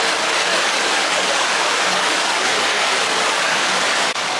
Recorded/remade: remade